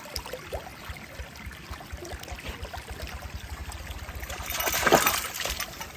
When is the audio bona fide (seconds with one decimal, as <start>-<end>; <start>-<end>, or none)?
0.0-6.0